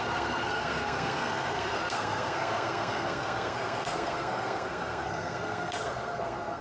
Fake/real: fake